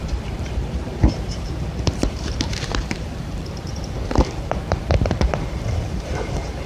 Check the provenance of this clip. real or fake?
fake